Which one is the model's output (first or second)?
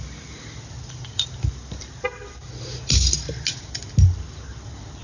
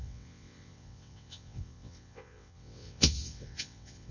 second